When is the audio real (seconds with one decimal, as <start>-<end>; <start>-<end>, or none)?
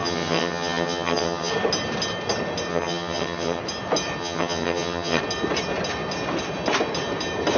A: 1.5-2.7; 3.6-4.2; 5.2-7.6